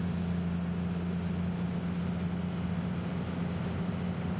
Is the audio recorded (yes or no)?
yes